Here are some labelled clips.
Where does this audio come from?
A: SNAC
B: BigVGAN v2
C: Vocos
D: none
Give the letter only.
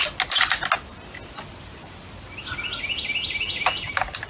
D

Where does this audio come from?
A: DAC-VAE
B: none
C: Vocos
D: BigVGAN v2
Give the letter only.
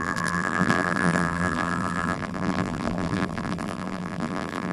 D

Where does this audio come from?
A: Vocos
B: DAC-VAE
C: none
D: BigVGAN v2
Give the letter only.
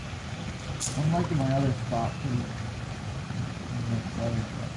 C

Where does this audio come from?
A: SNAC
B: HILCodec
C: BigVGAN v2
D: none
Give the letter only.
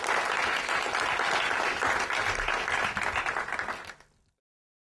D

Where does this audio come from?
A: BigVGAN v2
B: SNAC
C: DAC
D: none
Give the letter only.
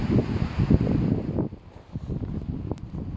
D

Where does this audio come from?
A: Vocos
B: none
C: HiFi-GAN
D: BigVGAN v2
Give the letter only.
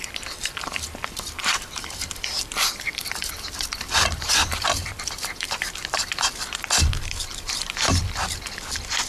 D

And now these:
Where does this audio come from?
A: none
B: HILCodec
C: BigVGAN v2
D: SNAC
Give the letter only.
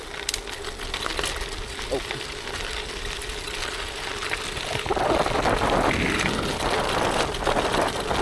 A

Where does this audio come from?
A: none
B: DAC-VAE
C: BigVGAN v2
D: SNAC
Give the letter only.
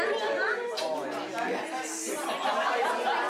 A